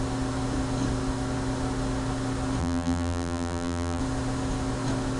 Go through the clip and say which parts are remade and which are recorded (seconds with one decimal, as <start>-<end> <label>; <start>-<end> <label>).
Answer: 0.0-2.6 recorded; 2.6-4.0 remade; 4.0-5.2 recorded